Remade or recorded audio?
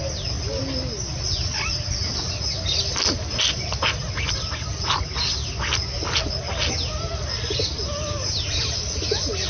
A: recorded